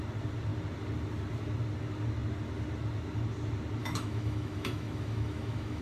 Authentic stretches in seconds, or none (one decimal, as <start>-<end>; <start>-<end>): 0.0-3.8